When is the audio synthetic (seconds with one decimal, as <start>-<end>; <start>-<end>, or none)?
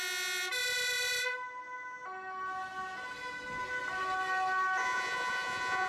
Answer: 4.8-5.9